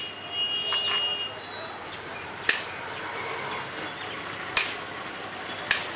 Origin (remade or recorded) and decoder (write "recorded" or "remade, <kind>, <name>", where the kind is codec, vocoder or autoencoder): recorded